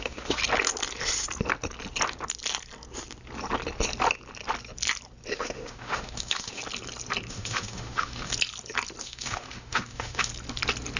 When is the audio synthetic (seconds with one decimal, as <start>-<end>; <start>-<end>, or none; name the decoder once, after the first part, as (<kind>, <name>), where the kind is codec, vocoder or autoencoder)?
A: 0.0-0.4 (autoencoder, DAC-VAE); 5.3-6.6; 7.3-8.3; 9.0-10.3